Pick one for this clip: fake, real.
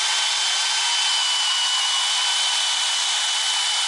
real